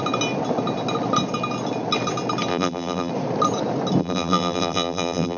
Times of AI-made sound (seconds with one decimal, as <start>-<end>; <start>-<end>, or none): 2.5-3.1; 4.0-5.4